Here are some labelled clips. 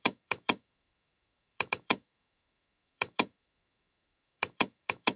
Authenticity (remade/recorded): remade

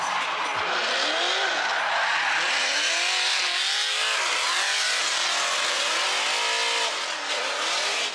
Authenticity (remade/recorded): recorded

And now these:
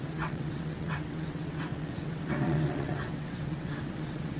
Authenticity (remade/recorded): remade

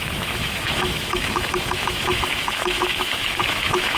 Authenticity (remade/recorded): remade